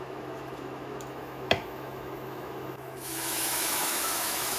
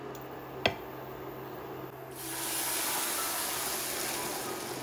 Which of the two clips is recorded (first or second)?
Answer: second